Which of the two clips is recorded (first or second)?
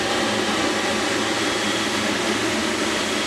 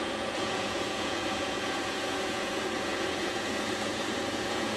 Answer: first